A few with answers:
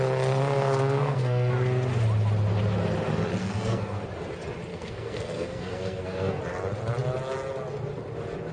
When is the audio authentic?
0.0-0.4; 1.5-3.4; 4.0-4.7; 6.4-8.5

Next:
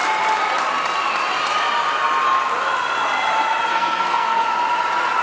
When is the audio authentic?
0.0-3.7; 4.4-5.2

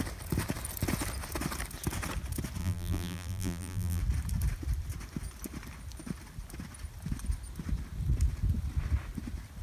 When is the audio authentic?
0.0-2.6; 4.0-9.6